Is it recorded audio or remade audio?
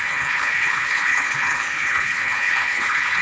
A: remade